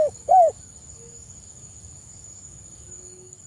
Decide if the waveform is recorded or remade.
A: remade